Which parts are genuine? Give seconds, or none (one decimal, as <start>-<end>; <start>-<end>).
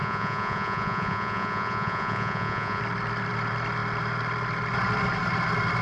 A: 2.8-5.8